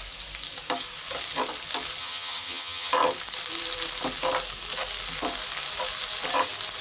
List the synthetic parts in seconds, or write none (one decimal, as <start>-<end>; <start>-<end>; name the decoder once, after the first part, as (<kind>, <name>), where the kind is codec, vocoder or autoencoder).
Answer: 2.0-2.9 (vocoder, HiFi-GAN)